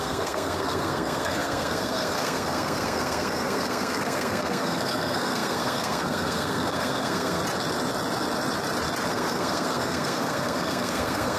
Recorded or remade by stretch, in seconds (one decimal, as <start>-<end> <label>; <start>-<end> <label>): 0.0-7.4 remade; 7.4-9.1 recorded; 9.1-11.4 remade